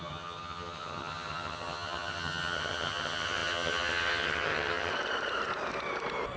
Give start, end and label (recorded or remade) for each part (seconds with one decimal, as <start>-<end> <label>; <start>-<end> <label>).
0.0-4.9 remade; 4.9-6.4 recorded